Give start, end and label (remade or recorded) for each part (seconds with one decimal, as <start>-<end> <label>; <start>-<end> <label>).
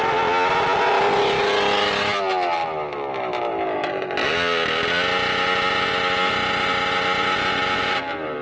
0.0-8.4 recorded